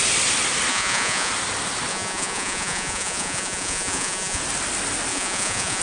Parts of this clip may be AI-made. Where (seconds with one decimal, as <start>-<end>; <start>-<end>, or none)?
0.7-1.3; 1.9-4.4; 5.1-5.8